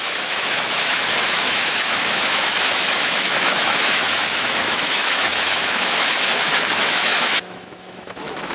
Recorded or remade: remade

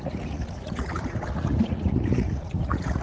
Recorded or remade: remade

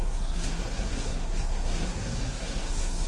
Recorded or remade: remade